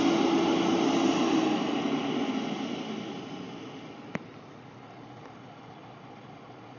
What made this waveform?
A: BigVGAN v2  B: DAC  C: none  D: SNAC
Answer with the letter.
C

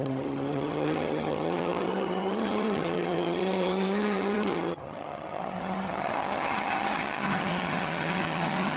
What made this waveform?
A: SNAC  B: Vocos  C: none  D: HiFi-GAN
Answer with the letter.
D